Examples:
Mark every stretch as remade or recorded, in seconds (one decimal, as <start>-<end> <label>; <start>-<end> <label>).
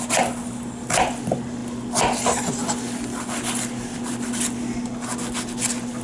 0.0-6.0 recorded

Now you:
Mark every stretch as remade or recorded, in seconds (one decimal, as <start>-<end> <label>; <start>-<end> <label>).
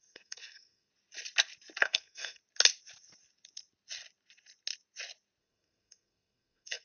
0.0-0.9 remade; 0.9-1.8 recorded; 1.8-2.4 remade; 2.4-5.4 recorded; 5.4-6.8 remade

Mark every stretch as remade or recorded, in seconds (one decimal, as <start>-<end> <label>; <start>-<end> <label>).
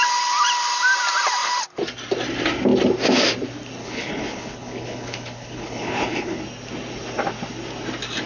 0.0-3.8 recorded; 3.8-6.4 remade; 6.4-8.3 recorded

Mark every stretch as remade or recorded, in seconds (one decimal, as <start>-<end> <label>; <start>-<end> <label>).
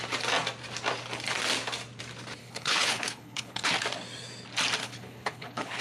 0.0-2.4 recorded; 2.4-3.7 remade; 3.7-4.8 recorded; 4.8-5.8 remade